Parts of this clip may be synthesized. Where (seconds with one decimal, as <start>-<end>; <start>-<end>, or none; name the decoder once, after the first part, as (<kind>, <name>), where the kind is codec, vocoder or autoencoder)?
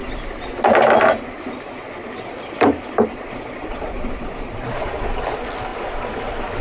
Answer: 3.1-5.1 (vocoder, Vocos)